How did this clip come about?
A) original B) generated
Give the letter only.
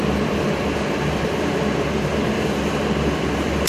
B